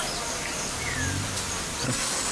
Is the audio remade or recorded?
recorded